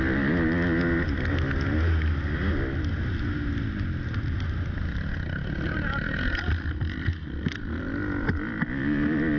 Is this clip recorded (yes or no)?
yes